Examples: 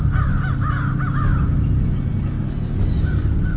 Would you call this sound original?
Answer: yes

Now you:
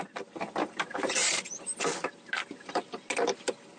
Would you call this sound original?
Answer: yes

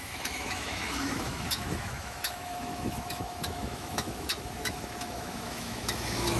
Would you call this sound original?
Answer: no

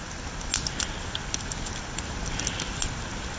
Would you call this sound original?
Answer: yes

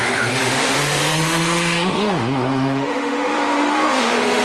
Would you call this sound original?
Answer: no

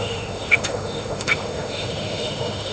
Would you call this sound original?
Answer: no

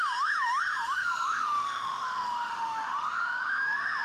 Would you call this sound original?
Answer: no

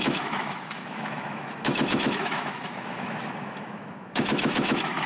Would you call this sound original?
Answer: no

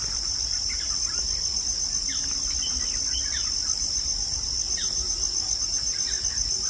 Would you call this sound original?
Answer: yes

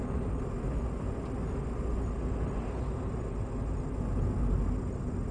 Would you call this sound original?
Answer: yes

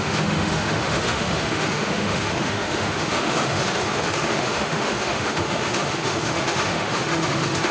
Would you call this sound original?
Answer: no